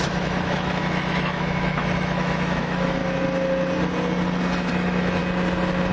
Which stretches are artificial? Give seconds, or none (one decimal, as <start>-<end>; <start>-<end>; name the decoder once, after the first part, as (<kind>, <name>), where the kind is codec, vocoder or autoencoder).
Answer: 0.0-3.0 (autoencoder, DAC-VAE); 4.7-5.2